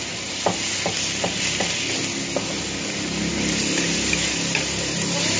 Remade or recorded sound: recorded